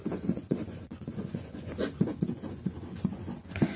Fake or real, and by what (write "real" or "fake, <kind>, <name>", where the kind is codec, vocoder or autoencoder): fake, vocoder, Vocos